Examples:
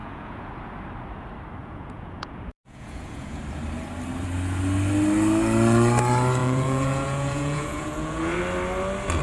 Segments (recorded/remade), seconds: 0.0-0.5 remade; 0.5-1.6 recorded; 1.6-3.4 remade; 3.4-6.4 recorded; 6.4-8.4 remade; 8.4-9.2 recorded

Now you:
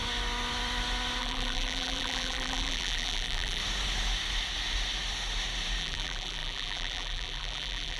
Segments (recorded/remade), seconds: 0.0-1.2 recorded; 1.2-3.6 remade; 3.6-5.8 recorded; 5.8-8.0 remade

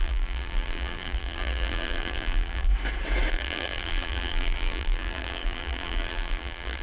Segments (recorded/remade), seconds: 0.0-2.7 remade; 2.7-3.3 recorded; 3.3-6.8 remade

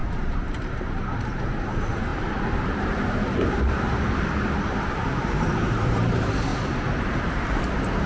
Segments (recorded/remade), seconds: 0.0-8.1 remade